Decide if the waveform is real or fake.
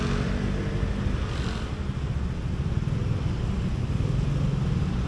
real